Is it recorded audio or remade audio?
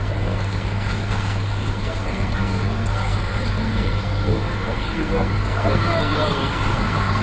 remade